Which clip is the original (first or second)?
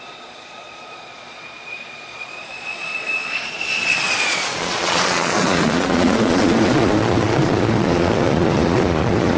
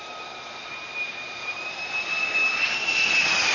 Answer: second